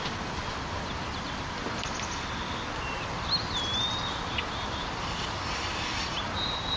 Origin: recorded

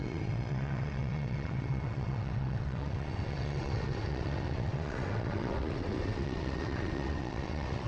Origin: remade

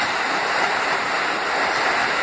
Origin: remade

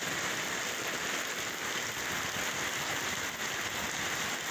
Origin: recorded